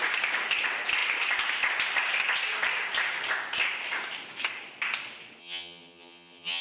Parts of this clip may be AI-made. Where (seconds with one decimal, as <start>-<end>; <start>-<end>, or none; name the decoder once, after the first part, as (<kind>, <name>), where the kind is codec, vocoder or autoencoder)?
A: 5.4-6.6 (vocoder, HiFi-GAN)